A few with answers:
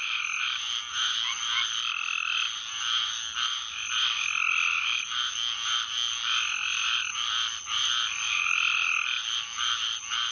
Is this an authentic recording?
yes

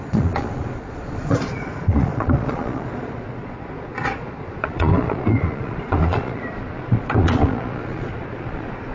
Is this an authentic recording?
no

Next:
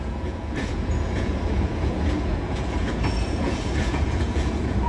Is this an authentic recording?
no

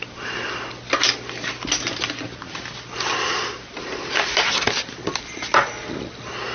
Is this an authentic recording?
yes